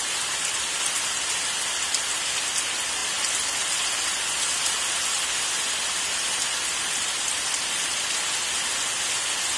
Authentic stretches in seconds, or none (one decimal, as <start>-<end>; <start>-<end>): 0.0-9.6